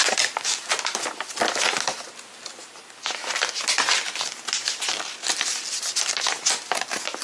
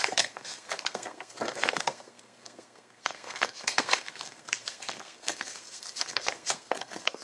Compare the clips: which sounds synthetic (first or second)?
second